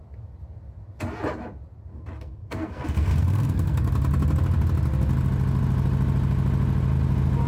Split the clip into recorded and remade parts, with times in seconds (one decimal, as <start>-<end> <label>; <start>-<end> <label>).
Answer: 0.0-1.9 recorded; 1.9-3.9 remade; 3.9-7.5 recorded